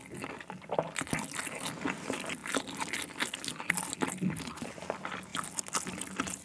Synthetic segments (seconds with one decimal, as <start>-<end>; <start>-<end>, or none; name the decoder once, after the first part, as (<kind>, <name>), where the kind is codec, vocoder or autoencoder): none